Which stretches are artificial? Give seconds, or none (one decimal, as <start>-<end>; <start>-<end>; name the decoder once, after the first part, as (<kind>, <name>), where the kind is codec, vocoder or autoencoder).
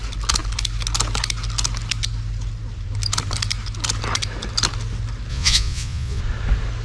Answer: 5.3-6.2 (vocoder, Vocos)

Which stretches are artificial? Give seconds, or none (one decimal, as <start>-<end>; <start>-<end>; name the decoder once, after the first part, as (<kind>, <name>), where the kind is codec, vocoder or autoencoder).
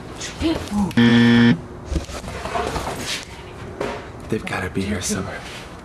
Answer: 5.0-5.8 (autoencoder, DAC-VAE)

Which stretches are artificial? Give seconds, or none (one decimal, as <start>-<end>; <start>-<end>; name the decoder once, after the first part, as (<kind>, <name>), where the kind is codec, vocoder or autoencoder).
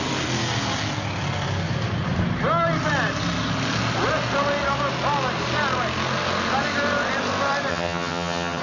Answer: 7.7-8.6 (vocoder, HiFi-GAN)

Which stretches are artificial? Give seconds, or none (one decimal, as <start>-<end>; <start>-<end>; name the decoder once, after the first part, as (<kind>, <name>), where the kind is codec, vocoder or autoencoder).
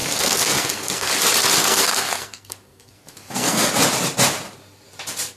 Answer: 0.0-1.1 (codec, SNAC); 1.6-3.7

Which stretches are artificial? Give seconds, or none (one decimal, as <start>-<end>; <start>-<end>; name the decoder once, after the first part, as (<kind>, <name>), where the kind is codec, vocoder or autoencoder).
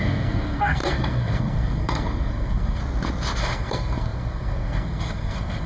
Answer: 0.0-2.8 (codec, SNAC); 3.4-5.7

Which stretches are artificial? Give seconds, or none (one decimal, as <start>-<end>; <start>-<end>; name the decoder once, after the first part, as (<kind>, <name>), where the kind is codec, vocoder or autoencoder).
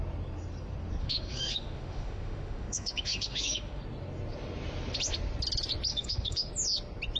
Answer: 1.0-3.8 (autoencoder, DAC-VAE); 5.9-6.5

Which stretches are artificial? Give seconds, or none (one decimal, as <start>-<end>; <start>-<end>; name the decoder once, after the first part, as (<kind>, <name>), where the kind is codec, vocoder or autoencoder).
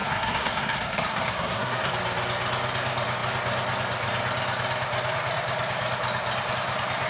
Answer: 0.0-1.9 (codec, SNAC)